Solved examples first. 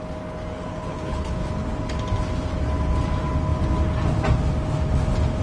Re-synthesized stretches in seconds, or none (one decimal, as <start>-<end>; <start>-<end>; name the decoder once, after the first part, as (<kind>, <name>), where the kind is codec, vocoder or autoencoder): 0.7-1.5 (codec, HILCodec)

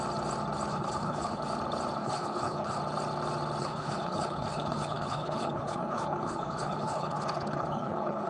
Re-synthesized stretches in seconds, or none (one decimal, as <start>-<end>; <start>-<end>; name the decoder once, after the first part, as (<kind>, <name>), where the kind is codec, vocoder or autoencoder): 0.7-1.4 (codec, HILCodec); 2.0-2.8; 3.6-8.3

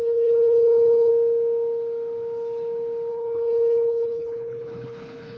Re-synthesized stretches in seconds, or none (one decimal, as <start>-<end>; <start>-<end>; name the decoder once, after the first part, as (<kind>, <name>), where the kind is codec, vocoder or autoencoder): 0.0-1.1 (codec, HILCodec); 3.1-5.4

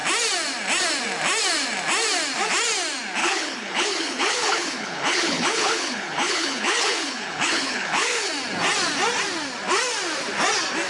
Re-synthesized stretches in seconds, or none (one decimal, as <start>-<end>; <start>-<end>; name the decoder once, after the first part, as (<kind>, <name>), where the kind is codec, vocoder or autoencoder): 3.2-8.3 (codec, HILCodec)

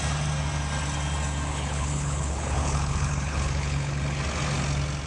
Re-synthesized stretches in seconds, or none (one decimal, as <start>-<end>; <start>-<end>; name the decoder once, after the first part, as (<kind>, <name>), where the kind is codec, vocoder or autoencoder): 1.5-4.2 (codec, HILCodec)